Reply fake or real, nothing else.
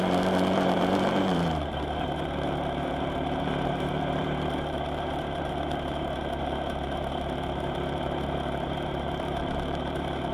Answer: fake